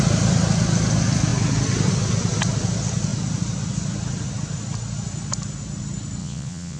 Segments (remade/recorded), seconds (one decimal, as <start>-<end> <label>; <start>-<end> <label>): 0.0-6.2 recorded; 6.2-6.8 remade